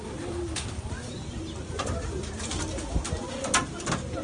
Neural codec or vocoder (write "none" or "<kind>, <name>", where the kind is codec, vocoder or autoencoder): none